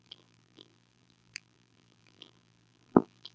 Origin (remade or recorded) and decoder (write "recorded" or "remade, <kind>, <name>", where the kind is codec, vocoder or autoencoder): remade, vocoder, BigVGAN v2